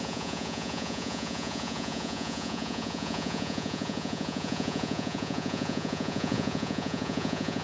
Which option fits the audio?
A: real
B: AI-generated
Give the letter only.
B